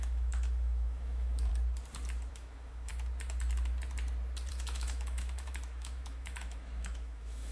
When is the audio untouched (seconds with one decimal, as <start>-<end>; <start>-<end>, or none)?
1.5-2.3; 2.9-4.5